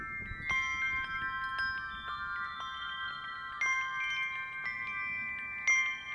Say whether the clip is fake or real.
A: real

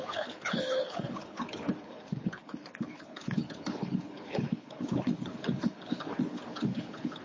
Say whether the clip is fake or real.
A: fake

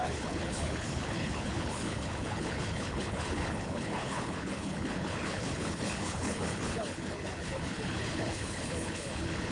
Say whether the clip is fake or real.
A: fake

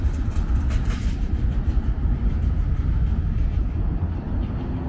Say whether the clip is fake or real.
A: real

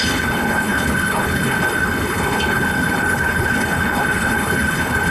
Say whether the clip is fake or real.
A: fake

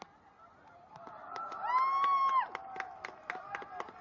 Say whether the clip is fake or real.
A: real